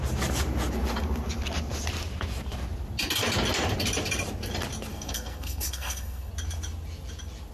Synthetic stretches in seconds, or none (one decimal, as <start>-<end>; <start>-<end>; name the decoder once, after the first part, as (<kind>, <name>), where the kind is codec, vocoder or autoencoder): 4.9-6.3 (codec, SNAC)

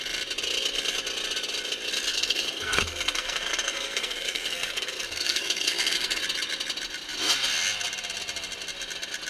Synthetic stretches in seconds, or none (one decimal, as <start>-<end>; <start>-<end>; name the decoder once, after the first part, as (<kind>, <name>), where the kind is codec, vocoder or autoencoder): 2.1-6.2 (codec, SNAC)

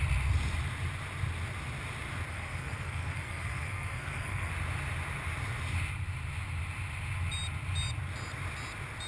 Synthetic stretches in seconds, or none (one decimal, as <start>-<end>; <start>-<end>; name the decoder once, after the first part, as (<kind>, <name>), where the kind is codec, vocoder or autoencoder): 2.3-4.5 (codec, SNAC)